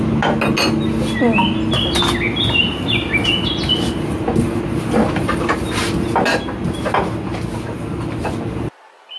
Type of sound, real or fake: real